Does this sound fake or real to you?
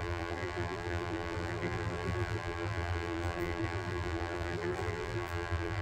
fake